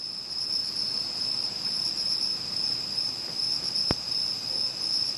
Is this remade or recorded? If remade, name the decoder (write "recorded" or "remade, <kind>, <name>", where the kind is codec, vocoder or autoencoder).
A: recorded